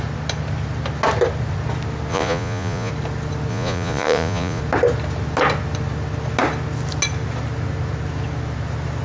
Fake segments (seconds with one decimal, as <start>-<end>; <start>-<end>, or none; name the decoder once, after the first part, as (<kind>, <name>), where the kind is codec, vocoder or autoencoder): 2.1-2.9 (vocoder, Vocos); 3.5-4.6